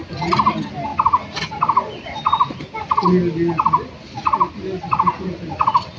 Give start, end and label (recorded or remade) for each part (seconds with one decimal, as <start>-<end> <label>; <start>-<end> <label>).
0.0-6.0 recorded